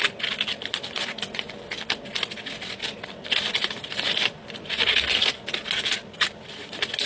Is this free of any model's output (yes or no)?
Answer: yes